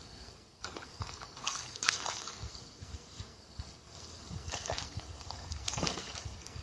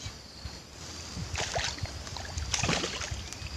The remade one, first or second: first